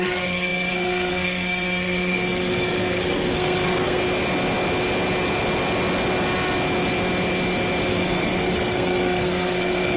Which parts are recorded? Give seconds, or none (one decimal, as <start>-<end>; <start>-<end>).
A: 4.0-7.9